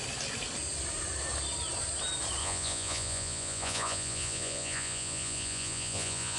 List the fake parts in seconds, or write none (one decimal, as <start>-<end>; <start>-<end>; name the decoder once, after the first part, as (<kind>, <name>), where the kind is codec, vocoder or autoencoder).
2.4-6.4 (vocoder, Vocos)